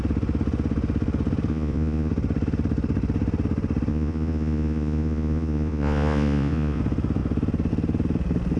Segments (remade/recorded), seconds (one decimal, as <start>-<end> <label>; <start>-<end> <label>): 0.0-1.5 recorded; 1.5-2.1 remade; 2.1-3.9 recorded; 3.9-6.8 remade; 6.8-8.6 recorded